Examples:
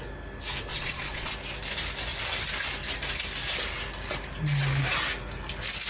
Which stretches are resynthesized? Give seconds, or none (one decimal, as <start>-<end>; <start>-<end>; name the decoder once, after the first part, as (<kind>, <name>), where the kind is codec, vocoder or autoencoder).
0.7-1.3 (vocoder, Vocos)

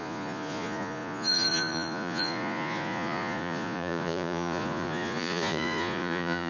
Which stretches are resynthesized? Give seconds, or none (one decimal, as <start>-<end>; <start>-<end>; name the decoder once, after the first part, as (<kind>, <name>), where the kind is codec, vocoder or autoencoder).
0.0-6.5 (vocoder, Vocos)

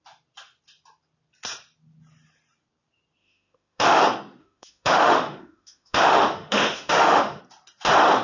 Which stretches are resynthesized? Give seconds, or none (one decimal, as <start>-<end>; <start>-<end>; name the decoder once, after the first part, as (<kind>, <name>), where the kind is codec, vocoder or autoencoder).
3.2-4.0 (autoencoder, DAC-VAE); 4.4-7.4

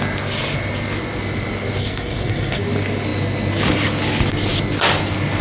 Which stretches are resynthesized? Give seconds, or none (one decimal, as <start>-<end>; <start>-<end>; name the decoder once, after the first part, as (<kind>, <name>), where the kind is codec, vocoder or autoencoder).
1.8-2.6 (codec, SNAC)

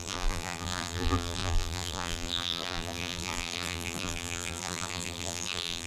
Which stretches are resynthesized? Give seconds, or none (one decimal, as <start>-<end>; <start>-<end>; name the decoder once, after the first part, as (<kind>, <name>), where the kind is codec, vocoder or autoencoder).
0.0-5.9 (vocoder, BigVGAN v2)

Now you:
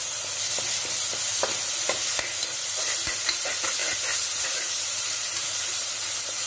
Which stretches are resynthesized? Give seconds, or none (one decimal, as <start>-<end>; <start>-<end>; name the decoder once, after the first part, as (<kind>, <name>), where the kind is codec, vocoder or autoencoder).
3.8-6.5 (vocoder, BigVGAN v2)

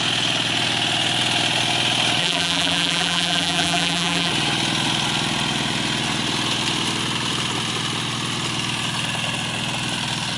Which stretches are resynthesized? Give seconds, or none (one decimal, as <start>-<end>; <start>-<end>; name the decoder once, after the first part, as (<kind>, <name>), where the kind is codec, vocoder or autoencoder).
2.2-4.3 (vocoder, BigVGAN v2)